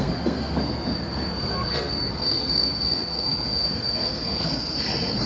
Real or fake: fake